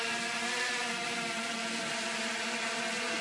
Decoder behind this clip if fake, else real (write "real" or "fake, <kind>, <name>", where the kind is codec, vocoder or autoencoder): real